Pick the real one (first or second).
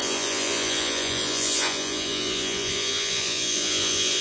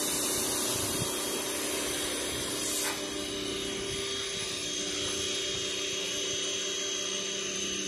second